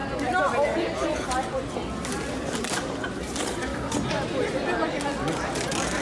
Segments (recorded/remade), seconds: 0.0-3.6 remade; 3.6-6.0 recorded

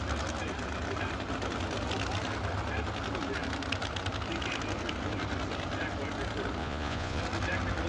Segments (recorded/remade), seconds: 0.0-6.6 recorded; 6.6-7.2 remade; 7.2-7.9 recorded

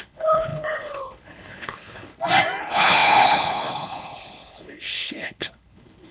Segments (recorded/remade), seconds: 0.0-2.1 remade; 2.1-2.6 recorded; 2.6-6.1 remade

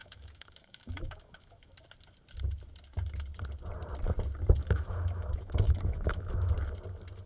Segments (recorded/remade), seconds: 0.0-1.7 remade; 1.7-4.6 recorded; 4.6-6.5 remade; 6.5-7.3 recorded

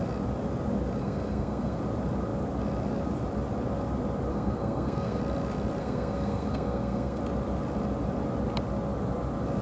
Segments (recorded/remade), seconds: 0.0-1.0 recorded; 1.0-1.8 remade; 1.8-4.3 recorded; 4.3-5.2 remade; 5.2-5.8 recorded; 5.8-7.2 remade; 7.2-9.6 recorded

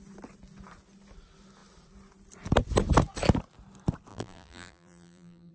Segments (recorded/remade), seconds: 0.0-4.1 recorded; 4.1-5.5 remade